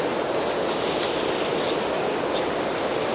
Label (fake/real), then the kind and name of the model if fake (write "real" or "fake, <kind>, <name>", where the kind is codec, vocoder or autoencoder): real